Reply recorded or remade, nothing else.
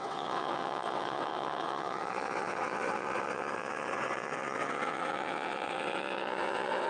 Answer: remade